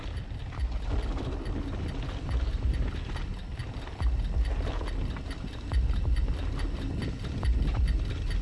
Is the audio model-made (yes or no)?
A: no